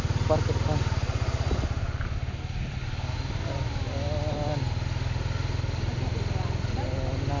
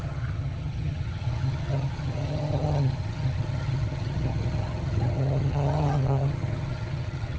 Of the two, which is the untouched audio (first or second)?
first